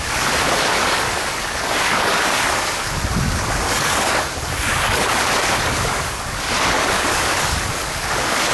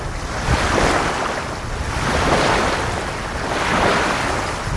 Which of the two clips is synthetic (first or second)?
first